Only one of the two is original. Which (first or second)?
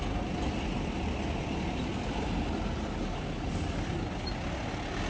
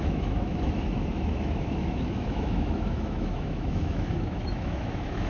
first